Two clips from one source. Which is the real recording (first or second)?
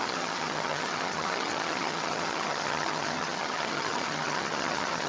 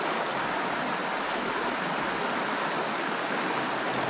second